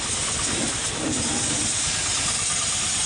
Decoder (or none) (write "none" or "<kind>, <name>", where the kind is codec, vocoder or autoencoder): none